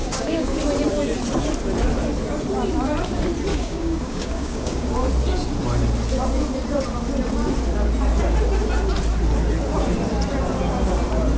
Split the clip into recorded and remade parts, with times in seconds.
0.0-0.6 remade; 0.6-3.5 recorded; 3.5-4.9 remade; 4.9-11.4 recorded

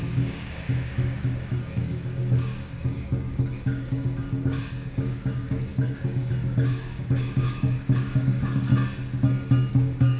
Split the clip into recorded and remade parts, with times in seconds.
0.0-8.7 remade; 8.7-9.7 recorded; 9.7-10.2 remade

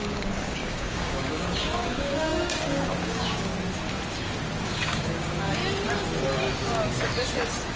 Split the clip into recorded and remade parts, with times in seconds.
0.0-3.5 remade; 3.5-4.4 recorded; 4.4-5.6 remade; 5.6-7.8 recorded

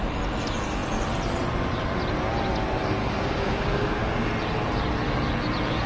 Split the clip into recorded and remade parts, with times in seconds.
0.0-3.0 recorded; 3.0-4.3 remade; 4.3-5.9 recorded

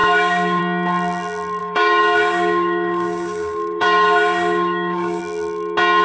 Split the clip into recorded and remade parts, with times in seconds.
0.0-0.6 remade; 0.6-1.6 recorded; 1.6-5.2 remade; 5.2-6.0 recorded

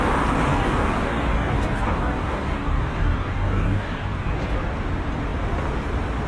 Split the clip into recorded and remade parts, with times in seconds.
0.0-0.5 recorded; 0.5-4.3 remade; 4.3-6.3 recorded